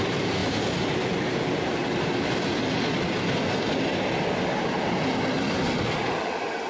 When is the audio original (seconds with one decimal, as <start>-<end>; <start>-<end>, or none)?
0.0-6.7